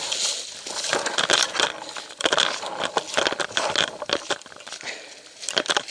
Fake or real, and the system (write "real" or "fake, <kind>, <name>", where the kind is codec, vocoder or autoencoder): real